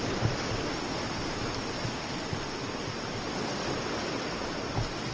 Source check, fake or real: real